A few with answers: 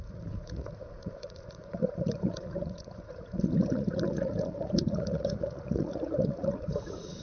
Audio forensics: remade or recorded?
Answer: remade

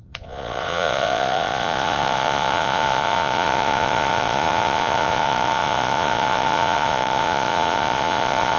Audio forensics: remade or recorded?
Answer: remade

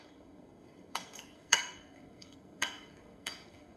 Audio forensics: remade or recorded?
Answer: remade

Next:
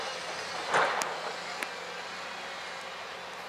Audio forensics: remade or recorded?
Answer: recorded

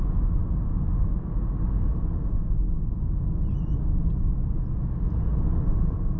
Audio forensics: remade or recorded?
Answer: recorded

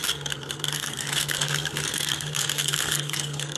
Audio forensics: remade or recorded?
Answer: remade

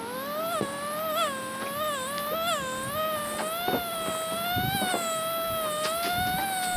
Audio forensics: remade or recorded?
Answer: recorded